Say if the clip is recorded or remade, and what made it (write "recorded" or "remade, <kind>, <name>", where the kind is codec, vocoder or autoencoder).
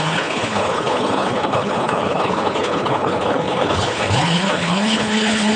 remade, codec, HILCodec